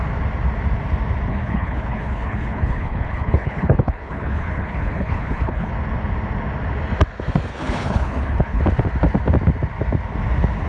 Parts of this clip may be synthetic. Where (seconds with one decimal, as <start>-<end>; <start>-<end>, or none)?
1.3-5.7; 7.5-8.6